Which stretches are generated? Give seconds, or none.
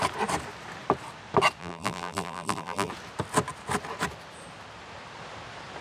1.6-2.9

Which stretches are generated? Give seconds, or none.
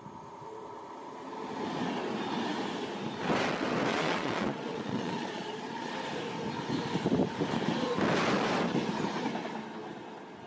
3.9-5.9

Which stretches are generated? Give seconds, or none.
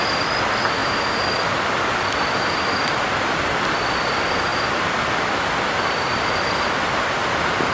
none